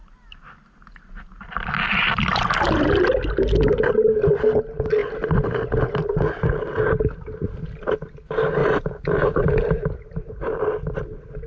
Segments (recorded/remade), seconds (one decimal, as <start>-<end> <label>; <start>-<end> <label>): 0.0-8.6 recorded; 8.6-10.6 remade; 10.6-11.5 recorded

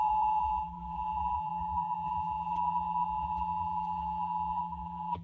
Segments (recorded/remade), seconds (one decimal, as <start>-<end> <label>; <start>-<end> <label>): 0.0-5.2 remade

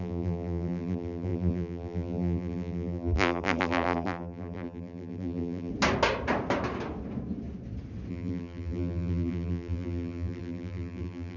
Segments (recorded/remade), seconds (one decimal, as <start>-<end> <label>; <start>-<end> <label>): 0.0-5.7 remade; 5.7-8.1 recorded; 8.1-11.4 remade

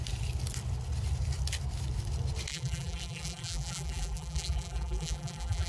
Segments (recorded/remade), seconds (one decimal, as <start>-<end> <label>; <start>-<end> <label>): 0.0-2.5 recorded; 2.5-5.7 remade

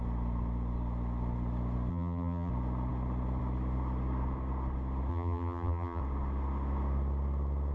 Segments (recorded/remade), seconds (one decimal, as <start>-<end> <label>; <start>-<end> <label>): 0.0-1.9 recorded; 1.9-2.5 remade; 2.5-5.1 recorded; 5.1-6.0 remade; 6.0-7.7 recorded

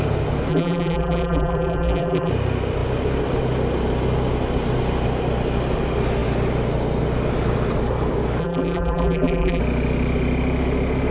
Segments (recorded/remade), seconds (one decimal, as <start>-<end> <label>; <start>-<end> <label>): 0.0-0.5 recorded; 0.5-2.3 remade; 2.3-8.4 recorded; 8.4-9.6 remade; 9.6-11.1 recorded